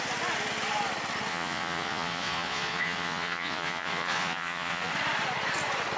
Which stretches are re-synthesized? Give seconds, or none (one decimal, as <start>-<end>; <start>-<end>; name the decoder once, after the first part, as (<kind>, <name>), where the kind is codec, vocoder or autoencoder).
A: 1.3-4.9 (vocoder, Vocos)